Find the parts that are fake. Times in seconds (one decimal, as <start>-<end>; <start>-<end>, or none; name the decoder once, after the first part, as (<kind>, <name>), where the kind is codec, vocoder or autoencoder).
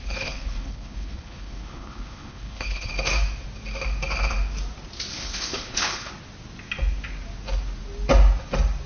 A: 0.0-2.9 (codec, HILCodec); 5.1-6.1